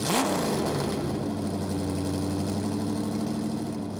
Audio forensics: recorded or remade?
recorded